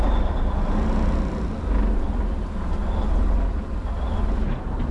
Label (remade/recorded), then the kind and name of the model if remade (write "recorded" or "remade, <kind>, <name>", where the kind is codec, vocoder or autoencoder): recorded